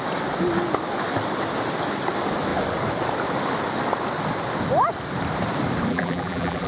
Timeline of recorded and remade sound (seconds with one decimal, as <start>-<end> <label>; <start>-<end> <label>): 0.0-5.9 recorded; 5.9-6.7 remade